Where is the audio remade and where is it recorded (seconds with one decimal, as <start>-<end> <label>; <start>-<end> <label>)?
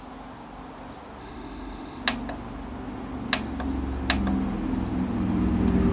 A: 0.0-1.2 recorded; 1.2-2.0 remade; 2.0-5.9 recorded